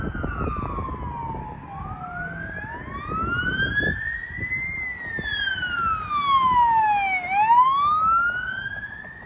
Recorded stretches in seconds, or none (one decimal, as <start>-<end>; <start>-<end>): 0.0-9.3